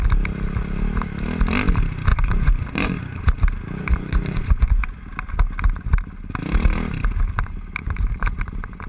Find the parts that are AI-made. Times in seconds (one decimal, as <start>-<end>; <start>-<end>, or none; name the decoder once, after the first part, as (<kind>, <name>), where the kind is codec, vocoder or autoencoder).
2.1-3.2 (vocoder, Vocos); 3.8-5.0; 7.8-8.4